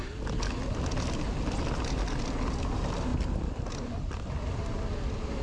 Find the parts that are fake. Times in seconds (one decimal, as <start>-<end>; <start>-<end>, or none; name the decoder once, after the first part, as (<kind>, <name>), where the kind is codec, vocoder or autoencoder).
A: none